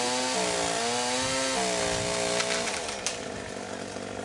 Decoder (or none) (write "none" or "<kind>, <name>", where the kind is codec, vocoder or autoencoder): none